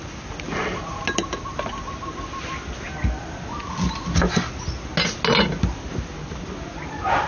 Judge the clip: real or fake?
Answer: real